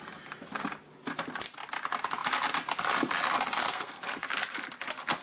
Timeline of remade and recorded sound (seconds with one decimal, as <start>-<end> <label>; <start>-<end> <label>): 0.0-3.7 recorded; 3.7-4.3 remade; 4.3-5.2 recorded